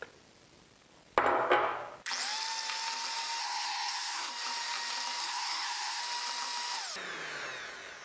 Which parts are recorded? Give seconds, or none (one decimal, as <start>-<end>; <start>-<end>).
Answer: 0.0-3.4; 4.3-5.2; 6.0-8.0